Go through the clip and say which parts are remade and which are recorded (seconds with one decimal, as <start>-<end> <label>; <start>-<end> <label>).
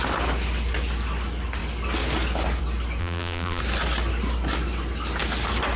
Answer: 0.0-3.0 recorded; 3.0-3.6 remade; 3.6-5.8 recorded